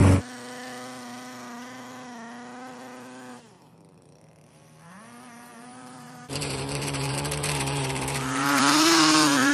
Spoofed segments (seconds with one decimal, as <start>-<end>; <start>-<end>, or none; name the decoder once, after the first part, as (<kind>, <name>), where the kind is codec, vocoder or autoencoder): 3.3-9.5 (vocoder, BigVGAN v2)